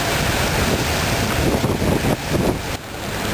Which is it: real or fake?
real